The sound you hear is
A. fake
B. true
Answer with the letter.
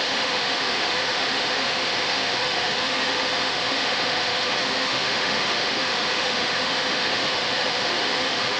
A